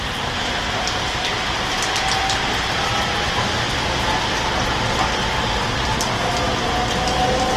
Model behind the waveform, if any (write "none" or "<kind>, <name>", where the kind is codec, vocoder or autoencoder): none